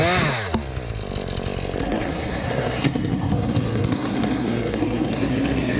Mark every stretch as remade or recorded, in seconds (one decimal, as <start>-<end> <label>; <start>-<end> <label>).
0.0-1.8 recorded; 1.8-5.8 remade